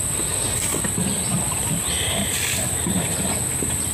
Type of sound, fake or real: real